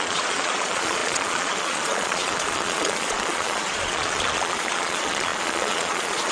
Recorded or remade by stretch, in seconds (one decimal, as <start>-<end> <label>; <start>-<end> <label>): 0.0-6.3 remade